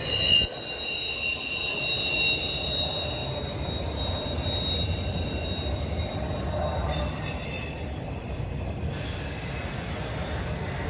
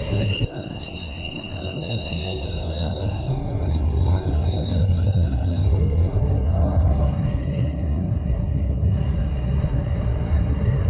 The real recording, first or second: first